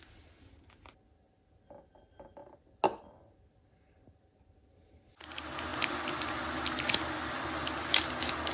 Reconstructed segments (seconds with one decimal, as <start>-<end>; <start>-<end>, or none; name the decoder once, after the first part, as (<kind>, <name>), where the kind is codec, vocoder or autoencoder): none